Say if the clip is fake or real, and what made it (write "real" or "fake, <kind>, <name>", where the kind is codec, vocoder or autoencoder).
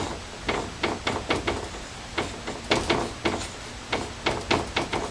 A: real